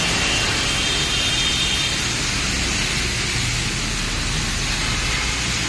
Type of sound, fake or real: real